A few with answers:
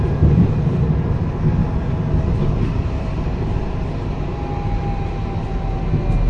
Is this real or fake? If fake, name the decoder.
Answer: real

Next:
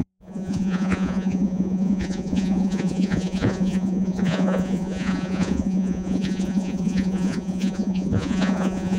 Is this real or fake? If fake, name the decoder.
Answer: fake, vocoder, Vocos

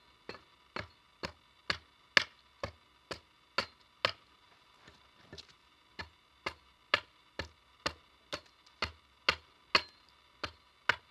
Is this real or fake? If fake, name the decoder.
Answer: real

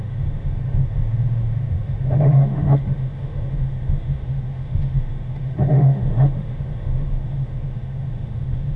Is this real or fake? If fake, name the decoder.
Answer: fake, autoencoder, DAC-VAE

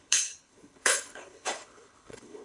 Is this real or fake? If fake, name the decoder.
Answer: fake, codec, HILCodec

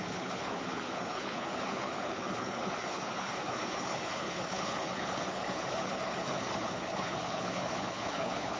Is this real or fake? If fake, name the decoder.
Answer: fake, codec, HILCodec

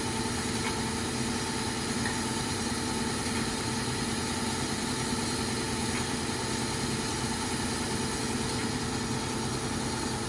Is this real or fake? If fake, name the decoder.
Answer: real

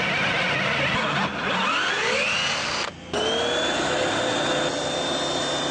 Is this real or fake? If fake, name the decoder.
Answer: real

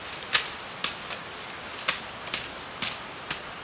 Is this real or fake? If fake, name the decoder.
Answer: real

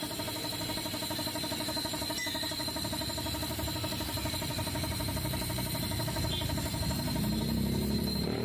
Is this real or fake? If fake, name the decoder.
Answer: fake, vocoder, BigVGAN v2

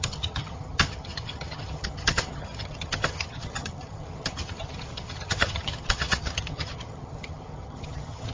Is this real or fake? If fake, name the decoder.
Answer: fake, vocoder, HiFi-GAN